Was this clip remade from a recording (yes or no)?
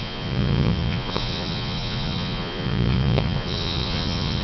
yes